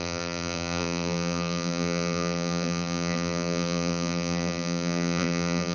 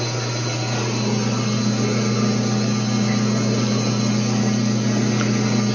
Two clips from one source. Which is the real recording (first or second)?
second